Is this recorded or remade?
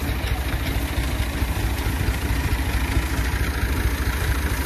recorded